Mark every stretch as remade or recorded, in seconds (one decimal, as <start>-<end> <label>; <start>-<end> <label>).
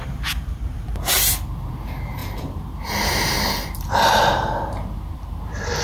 0.0-0.9 remade; 0.9-1.6 recorded; 1.6-5.8 remade